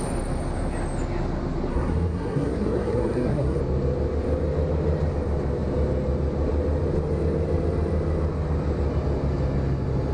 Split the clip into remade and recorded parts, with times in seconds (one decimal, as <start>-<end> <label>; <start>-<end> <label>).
0.0-1.7 recorded; 1.7-3.6 remade; 3.6-10.1 recorded